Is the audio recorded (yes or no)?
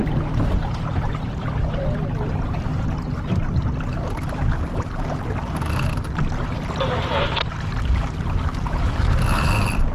yes